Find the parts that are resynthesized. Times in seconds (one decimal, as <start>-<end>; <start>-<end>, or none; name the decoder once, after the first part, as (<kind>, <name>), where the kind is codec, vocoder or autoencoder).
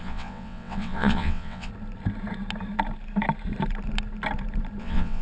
0.0-1.7 (vocoder, WaveNeXt); 4.8-5.2